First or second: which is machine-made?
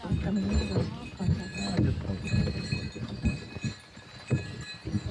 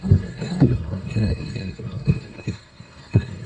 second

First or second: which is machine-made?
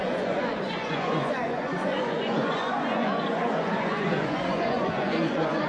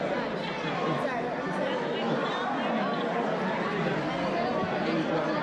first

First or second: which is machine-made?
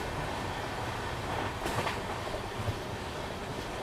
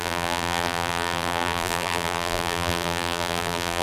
second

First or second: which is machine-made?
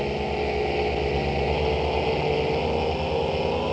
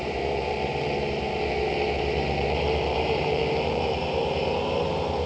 second